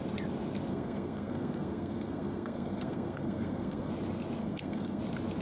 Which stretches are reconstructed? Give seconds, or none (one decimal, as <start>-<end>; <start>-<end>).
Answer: 0.7-3.9; 4.4-5.0